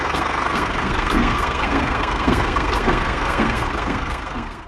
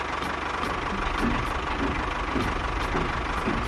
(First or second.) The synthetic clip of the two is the first